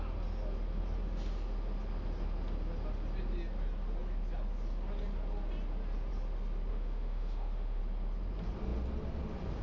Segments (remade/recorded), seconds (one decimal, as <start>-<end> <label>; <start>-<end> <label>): 0.0-6.7 recorded; 6.7-7.8 remade; 7.8-9.6 recorded